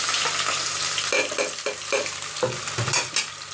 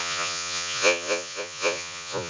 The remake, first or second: second